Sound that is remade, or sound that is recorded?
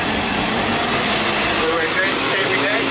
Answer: recorded